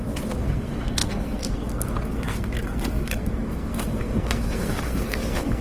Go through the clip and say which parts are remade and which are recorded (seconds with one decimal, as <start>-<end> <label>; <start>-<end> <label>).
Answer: 0.0-5.6 remade